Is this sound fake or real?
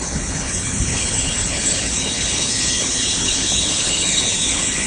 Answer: fake